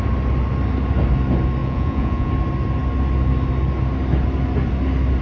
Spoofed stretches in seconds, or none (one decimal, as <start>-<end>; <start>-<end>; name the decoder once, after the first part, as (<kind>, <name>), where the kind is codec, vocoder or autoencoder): 1.6-2.3 (vocoder, Vocos)